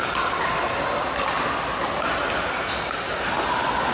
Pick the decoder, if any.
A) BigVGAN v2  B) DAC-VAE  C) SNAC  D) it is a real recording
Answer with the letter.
D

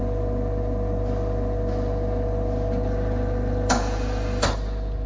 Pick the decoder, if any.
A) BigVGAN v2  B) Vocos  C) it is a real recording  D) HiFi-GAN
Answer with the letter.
C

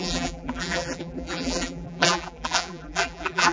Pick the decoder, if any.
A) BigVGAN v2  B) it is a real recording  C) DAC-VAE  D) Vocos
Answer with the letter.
A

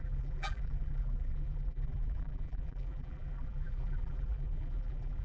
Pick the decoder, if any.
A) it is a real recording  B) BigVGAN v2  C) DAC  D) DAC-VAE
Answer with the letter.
B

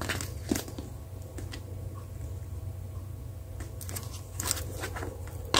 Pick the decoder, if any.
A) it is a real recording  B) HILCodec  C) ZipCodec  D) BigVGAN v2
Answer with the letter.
A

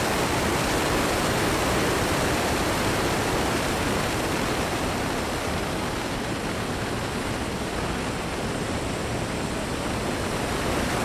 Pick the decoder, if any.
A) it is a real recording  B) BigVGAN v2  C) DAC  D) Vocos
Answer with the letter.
B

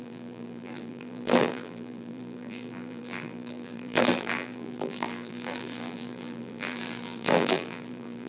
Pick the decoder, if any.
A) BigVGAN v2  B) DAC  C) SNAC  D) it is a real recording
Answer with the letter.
A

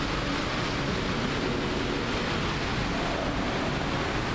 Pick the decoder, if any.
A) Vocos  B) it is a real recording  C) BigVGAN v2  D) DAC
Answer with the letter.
B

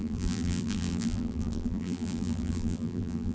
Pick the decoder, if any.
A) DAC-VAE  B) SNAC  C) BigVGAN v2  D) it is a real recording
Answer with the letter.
C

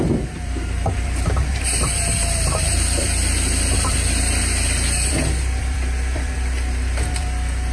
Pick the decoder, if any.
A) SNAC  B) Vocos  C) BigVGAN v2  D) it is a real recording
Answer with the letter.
C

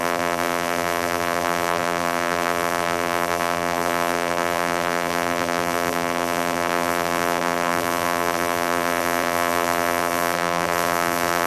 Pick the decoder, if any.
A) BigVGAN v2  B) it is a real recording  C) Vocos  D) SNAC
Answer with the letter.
A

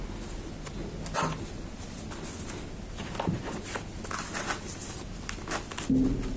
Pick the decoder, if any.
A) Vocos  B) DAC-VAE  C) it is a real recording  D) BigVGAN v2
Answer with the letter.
C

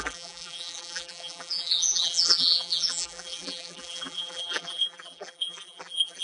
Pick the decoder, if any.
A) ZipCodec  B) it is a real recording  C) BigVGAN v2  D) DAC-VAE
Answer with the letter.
C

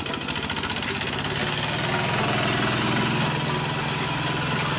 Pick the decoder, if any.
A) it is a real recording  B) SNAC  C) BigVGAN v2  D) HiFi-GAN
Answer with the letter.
A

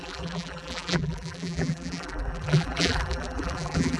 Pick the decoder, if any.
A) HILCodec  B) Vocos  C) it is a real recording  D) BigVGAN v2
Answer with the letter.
D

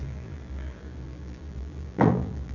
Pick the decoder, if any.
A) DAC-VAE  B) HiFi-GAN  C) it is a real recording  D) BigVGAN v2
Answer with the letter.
D